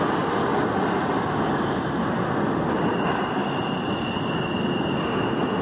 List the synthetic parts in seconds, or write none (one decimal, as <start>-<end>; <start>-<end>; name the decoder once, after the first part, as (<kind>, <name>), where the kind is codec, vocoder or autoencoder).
3.4-3.9 (vocoder, BigVGAN v2)